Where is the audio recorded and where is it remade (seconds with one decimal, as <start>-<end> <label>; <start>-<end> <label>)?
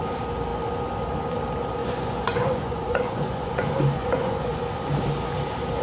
0.0-1.8 recorded; 1.8-4.6 remade; 4.6-5.8 recorded